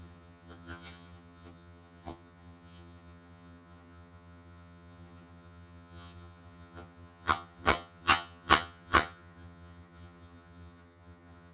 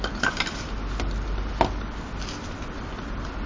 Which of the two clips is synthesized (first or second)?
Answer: first